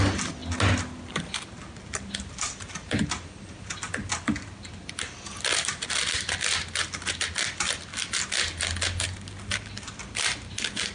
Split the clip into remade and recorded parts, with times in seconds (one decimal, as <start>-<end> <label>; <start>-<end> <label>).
0.0-10.9 recorded